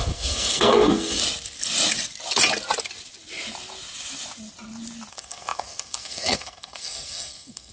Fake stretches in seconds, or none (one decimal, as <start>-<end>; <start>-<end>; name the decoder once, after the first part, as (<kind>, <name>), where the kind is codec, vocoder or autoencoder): 0.0-1.2 (codec, SNAC); 5.1-7.7